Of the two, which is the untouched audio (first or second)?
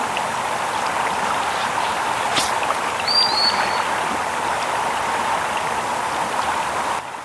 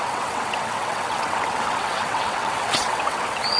first